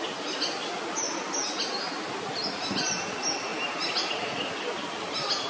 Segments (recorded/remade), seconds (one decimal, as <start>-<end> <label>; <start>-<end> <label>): 0.0-5.5 recorded